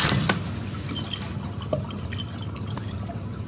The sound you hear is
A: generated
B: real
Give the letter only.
B